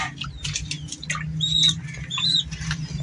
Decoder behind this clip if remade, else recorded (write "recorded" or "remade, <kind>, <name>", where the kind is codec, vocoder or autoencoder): recorded